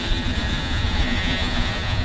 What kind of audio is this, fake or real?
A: fake